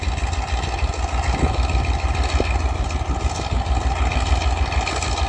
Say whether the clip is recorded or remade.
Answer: recorded